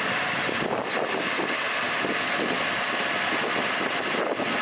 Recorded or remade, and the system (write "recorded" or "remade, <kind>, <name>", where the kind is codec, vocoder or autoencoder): recorded